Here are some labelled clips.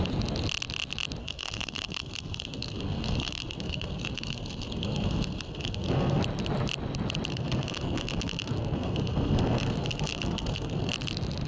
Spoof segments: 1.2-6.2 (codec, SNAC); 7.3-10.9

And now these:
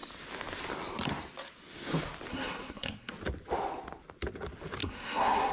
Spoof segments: 2.3-3.1 (codec, SNAC); 4.8-5.5

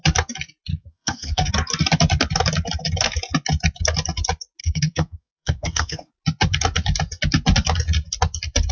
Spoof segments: 0.7-1.5 (codec, SNAC); 4.6-6.1

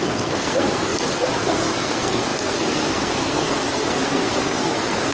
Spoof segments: 0.0-5.1 (codec, SNAC)

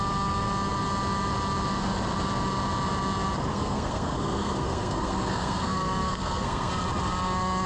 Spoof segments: 3.5-6.7 (codec, SNAC)

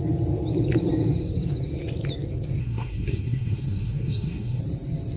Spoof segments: 2.6-4.6 (codec, SNAC)

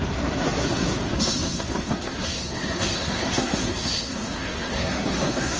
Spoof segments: 0.0-5.6 (codec, SNAC)